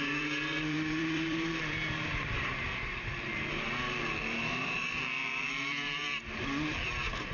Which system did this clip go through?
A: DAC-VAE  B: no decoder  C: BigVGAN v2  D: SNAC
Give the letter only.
C